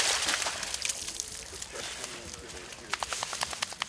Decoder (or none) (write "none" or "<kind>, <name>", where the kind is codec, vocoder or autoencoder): none